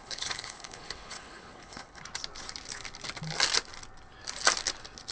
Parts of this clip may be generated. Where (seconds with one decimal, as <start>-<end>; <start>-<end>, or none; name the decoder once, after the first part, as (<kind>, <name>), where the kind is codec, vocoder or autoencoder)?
0.0-2.0 (codec, HILCodec)